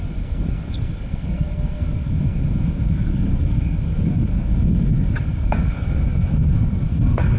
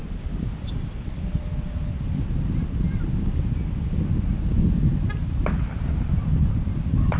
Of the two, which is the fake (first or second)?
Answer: first